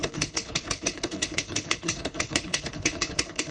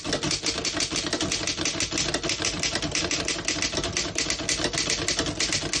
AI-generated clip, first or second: first